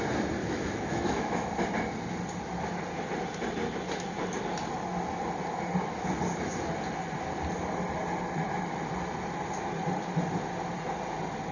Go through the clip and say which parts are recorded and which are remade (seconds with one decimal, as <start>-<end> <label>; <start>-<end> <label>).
0.0-0.4 recorded; 0.4-1.5 remade; 1.5-11.5 recorded